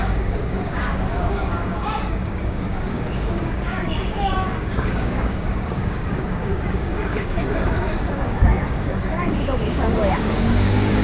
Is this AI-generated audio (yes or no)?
yes